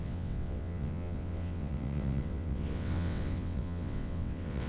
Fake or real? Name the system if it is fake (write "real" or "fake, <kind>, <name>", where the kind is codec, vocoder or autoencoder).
fake, vocoder, WaveNeXt